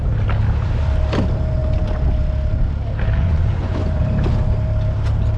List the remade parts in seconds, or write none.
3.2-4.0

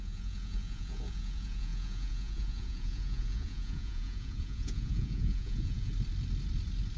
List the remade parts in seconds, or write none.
0.0-5.9